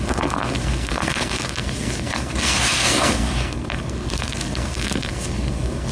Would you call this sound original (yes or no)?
no